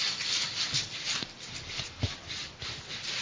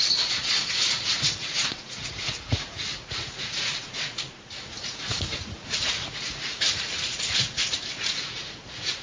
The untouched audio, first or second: first